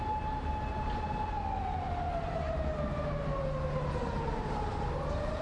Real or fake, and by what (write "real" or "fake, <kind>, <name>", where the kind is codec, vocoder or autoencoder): real